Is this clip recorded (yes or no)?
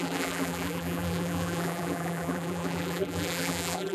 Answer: no